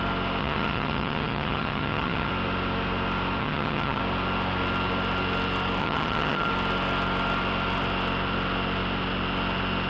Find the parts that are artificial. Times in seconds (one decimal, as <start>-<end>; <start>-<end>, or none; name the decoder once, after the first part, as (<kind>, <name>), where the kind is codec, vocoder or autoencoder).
0.4-2.3 (vocoder, HiFi-GAN); 3.4-4.0; 5.8-6.5

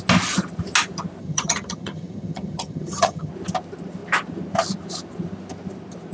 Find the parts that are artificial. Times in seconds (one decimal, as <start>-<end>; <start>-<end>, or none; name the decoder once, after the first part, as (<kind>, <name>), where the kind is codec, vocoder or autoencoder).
1.2-3.3 (vocoder, HiFi-GAN)

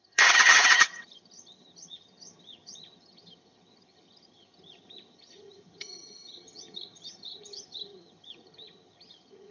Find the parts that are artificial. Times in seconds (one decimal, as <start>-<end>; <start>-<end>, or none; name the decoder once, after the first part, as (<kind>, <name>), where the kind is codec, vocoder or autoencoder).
0.0-9.5 (vocoder, HiFi-GAN)

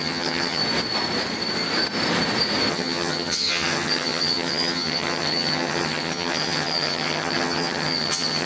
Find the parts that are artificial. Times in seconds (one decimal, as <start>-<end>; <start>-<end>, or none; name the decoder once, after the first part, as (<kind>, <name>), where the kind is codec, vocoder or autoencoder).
0.0-0.6 (vocoder, HiFi-GAN); 2.7-8.5

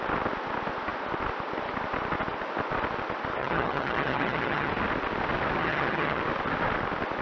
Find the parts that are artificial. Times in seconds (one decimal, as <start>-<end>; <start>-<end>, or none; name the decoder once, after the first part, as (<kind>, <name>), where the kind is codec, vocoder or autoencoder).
3.4-4.7 (vocoder, HiFi-GAN); 5.6-6.2

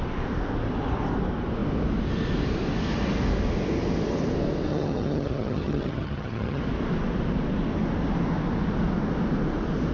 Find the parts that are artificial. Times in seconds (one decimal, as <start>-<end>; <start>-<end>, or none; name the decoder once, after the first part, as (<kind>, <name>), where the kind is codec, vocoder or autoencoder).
4.7-6.6 (vocoder, HiFi-GAN)

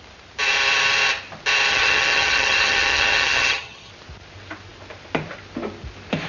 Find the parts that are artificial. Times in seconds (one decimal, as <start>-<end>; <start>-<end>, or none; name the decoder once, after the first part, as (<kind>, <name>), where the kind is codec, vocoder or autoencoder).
1.7-3.9 (vocoder, HiFi-GAN)